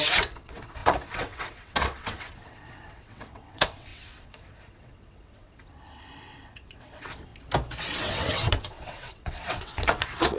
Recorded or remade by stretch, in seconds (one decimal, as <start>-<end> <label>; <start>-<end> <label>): 0.0-7.3 remade; 7.3-7.8 recorded; 7.8-10.4 remade